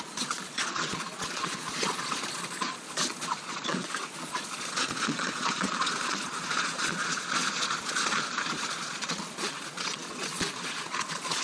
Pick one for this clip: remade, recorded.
remade